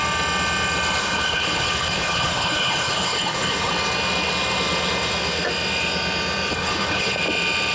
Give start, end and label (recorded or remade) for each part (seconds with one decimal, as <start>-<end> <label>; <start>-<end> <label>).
0.0-1.0 recorded; 1.0-3.7 remade; 3.7-6.5 recorded; 6.5-7.2 remade; 7.2-7.7 recorded